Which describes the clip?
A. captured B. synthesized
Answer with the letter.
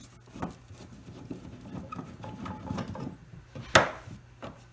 A